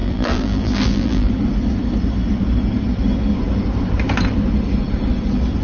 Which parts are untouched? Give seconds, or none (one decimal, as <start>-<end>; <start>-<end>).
1.3-5.6

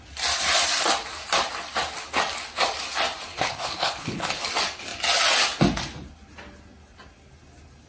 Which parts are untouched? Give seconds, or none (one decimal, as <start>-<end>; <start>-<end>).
0.0-3.3; 4.4-7.9

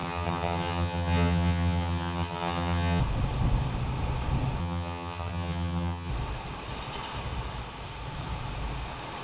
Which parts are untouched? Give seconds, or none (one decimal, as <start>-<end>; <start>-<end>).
3.0-4.6; 6.1-9.2

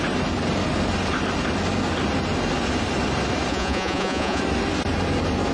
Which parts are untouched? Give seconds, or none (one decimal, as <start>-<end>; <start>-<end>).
0.0-3.5; 4.4-5.5